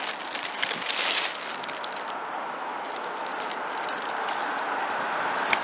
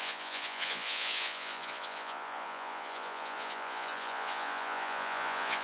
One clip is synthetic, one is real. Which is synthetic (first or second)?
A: second